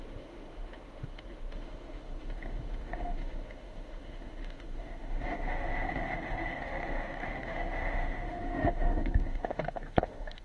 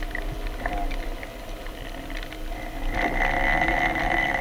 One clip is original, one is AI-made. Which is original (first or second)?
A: second